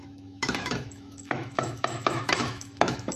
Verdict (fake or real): fake